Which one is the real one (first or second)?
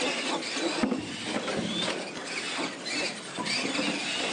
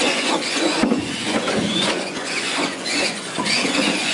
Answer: first